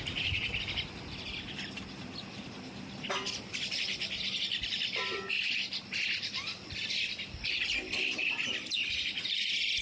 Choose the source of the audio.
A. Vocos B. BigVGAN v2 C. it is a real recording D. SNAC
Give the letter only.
B